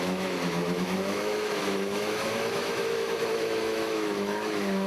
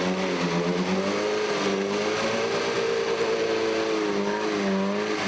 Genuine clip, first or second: second